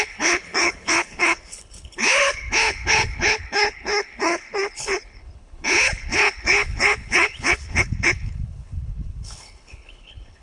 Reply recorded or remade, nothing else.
remade